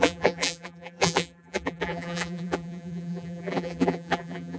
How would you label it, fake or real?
fake